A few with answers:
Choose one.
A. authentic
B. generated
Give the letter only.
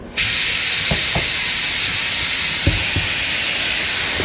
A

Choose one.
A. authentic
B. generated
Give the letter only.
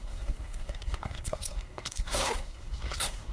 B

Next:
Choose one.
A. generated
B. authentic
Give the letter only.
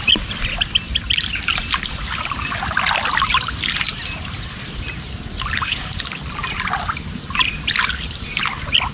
B